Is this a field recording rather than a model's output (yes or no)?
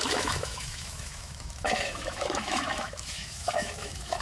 no